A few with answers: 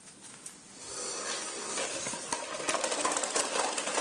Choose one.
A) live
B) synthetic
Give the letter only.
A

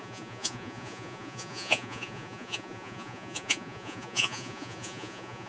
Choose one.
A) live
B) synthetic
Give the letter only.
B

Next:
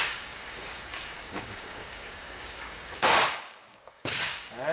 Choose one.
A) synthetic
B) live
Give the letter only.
A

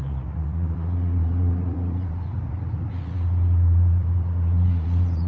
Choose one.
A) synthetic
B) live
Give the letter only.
A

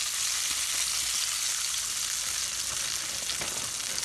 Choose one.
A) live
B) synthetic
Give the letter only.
A